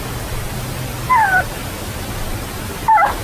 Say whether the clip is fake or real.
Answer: real